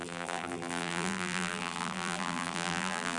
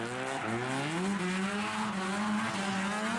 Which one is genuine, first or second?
second